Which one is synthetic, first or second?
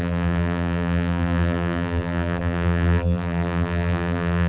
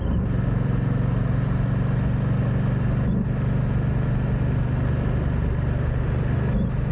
first